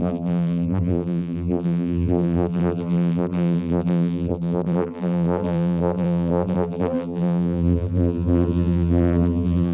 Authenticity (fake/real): fake